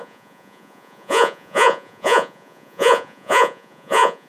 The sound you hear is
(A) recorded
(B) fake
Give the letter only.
B